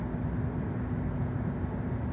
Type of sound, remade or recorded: recorded